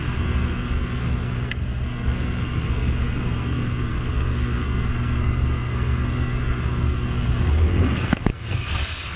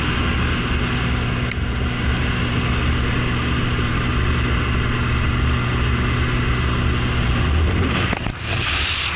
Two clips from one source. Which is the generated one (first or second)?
first